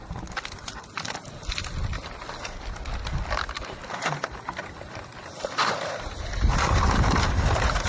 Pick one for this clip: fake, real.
real